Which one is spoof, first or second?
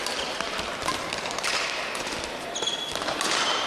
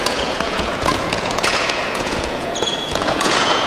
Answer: second